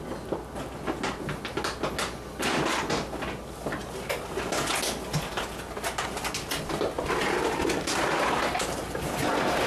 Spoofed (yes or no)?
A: no